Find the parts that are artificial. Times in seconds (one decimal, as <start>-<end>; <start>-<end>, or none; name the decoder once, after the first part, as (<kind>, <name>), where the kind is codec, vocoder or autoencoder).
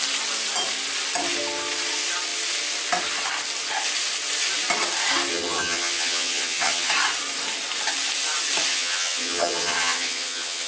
5.3-6.9 (vocoder, HiFi-GAN); 8.7-10.7